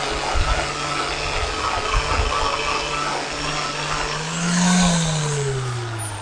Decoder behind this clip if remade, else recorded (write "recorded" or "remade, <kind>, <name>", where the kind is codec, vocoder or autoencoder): recorded